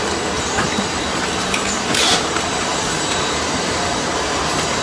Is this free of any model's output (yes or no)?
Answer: no